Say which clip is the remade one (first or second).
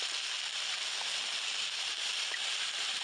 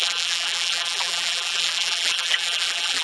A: second